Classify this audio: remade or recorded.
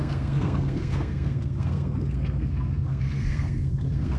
remade